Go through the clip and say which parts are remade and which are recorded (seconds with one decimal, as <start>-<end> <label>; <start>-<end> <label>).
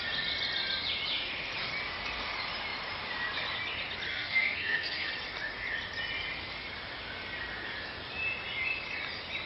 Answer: 0.0-4.1 recorded; 4.1-5.1 remade; 5.1-9.5 recorded